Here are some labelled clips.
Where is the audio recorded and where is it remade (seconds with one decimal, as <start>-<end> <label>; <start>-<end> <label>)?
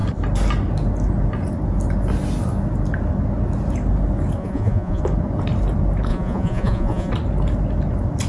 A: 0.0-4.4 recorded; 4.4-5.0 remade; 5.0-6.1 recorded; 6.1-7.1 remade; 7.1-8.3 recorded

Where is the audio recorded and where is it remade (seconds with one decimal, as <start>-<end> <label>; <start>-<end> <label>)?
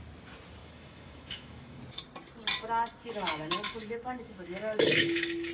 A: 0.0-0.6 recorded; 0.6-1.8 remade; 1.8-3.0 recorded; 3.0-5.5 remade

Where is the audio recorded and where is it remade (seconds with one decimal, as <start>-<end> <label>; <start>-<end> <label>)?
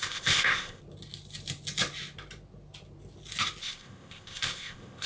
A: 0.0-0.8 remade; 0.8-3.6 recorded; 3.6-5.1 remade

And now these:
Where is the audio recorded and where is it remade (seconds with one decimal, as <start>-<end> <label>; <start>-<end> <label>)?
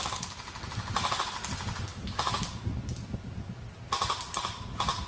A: 0.0-5.1 recorded